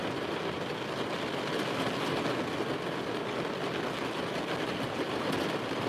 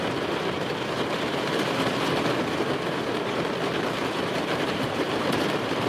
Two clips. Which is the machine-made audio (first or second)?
second